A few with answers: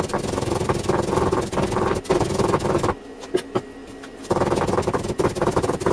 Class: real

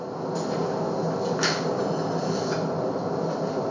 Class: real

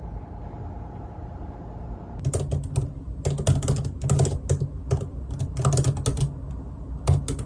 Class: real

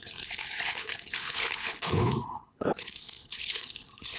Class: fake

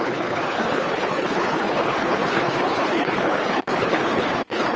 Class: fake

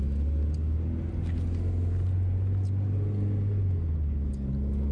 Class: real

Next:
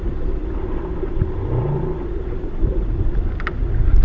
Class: real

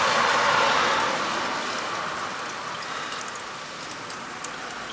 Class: real